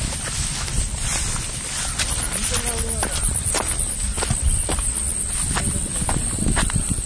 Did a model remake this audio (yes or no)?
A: no